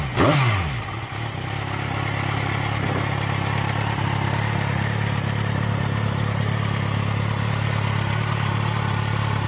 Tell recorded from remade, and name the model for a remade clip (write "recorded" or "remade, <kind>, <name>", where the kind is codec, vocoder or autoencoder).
recorded